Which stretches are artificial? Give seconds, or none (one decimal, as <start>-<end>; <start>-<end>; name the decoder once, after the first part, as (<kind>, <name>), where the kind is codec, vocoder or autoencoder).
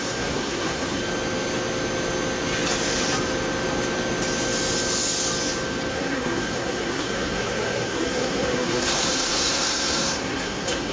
0.0-1.0 (codec, SNAC); 5.9-10.9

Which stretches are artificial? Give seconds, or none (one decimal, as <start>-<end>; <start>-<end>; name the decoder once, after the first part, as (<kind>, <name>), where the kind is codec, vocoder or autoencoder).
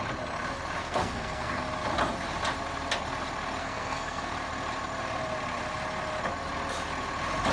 0.8-1.6 (codec, SNAC); 3.6-4.3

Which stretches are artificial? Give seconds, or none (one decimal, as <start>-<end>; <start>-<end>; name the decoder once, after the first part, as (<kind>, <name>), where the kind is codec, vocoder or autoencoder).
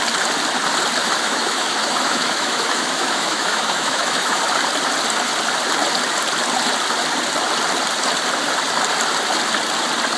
1.0-4.4 (autoencoder, DAC-VAE)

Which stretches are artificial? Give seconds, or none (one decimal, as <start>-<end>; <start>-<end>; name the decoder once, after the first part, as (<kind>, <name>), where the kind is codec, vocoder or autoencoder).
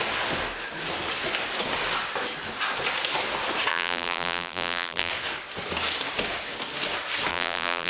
3.7-5.1 (vocoder, BigVGAN v2); 7.3-7.9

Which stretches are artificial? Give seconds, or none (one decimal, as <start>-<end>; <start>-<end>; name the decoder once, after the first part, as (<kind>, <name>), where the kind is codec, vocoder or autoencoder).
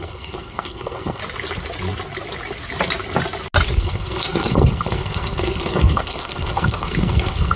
0.0-1.2 (codec, SNAC); 3.7-7.6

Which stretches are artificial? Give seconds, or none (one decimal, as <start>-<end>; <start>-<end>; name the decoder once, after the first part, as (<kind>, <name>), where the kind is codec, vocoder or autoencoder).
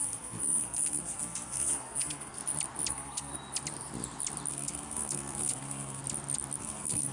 0.0-2.4 (codec, SNAC); 2.9-3.3; 4.5-6.0; 6.6-7.1